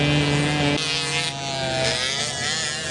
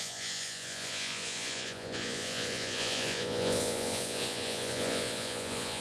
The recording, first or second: first